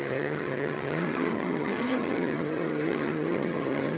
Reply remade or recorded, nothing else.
remade